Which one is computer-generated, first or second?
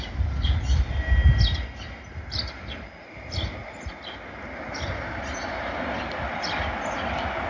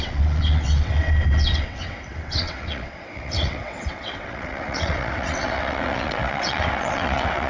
second